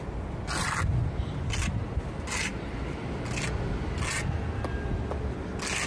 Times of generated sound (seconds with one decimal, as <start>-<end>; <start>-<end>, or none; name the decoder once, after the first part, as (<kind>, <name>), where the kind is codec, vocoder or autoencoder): none